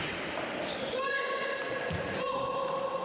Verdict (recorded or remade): recorded